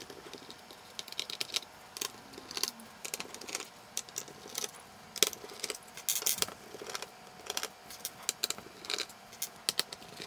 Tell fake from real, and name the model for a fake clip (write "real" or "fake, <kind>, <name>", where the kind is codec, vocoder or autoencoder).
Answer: real